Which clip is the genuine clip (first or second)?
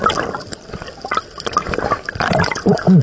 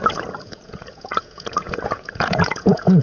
first